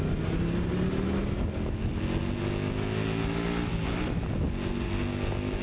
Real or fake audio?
real